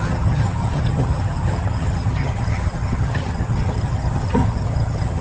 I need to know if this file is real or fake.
fake